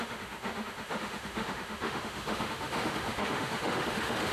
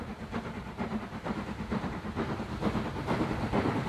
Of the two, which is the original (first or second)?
second